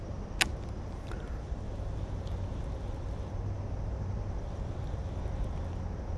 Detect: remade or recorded recorded